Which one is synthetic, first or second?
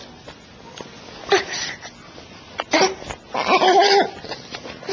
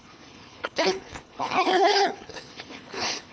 second